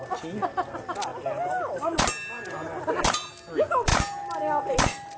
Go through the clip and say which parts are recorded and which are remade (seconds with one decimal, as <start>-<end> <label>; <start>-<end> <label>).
0.0-5.2 recorded